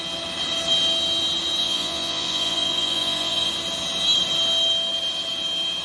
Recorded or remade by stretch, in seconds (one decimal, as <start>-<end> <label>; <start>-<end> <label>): 0.0-1.6 recorded; 1.6-3.5 remade; 3.5-5.8 recorded